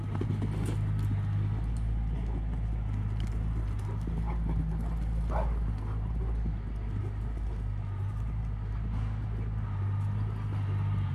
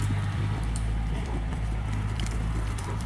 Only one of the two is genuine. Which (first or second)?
first